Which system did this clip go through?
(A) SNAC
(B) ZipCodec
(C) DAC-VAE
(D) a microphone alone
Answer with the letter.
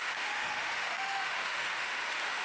C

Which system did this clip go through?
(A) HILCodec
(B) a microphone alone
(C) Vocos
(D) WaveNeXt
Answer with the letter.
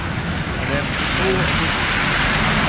B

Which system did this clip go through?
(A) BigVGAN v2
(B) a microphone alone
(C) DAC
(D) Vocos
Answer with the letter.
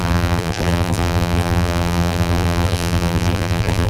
A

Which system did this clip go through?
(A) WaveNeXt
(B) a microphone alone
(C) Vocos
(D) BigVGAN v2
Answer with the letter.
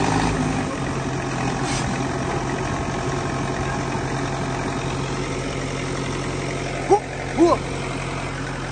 B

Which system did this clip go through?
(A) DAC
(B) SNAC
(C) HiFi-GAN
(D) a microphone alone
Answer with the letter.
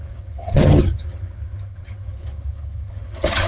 C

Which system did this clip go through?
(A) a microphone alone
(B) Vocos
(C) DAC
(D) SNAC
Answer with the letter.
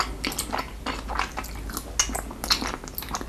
A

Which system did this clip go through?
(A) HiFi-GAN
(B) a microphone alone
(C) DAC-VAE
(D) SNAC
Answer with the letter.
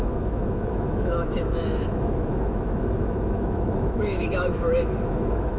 C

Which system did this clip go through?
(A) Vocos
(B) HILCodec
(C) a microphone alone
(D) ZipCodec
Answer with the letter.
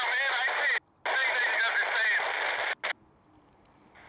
C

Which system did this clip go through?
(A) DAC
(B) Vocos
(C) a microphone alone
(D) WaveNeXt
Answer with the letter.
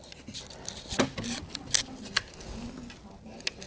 C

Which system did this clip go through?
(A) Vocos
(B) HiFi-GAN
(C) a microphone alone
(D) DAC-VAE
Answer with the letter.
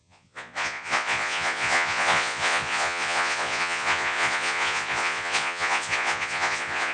A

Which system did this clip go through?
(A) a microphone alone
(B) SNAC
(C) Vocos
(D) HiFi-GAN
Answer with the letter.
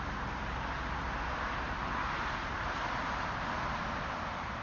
A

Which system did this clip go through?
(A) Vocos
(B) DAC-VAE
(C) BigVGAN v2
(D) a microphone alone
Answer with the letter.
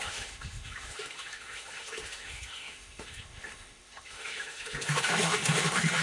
B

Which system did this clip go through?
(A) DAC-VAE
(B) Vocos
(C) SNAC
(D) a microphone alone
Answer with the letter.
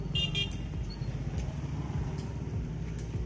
D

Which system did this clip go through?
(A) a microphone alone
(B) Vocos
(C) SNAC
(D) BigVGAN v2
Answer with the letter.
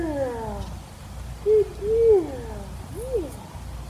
A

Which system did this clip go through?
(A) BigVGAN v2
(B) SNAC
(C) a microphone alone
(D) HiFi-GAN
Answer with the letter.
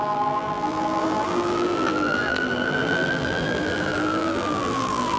A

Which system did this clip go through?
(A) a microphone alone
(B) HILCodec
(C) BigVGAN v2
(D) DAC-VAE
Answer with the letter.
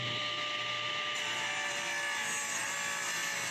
A